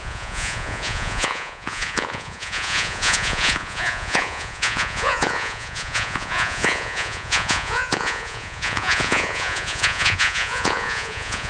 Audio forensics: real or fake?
fake